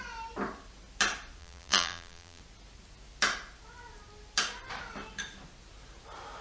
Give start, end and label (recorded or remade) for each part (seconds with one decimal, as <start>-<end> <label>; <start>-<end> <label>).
0.0-1.4 recorded; 1.4-2.4 remade; 2.4-6.4 recorded